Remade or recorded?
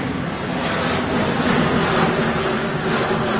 recorded